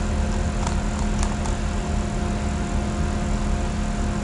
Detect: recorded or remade recorded